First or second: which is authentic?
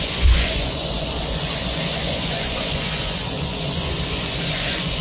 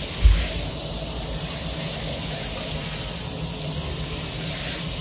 second